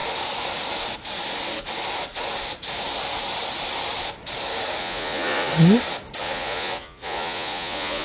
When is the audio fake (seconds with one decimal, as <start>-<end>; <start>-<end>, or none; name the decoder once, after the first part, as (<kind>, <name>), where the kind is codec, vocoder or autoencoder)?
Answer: 4.8-5.5 (vocoder, Vocos); 6.2-8.0